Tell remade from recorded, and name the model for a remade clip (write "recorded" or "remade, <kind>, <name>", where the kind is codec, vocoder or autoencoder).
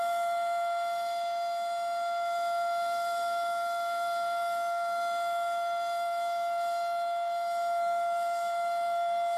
remade, vocoder, BigVGAN v2